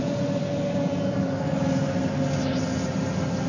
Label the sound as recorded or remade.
recorded